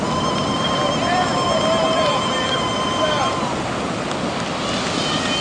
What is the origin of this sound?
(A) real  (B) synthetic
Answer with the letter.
A